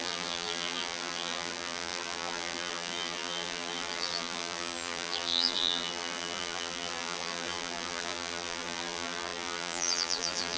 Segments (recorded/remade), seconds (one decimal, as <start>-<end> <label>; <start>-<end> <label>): 0.0-10.6 remade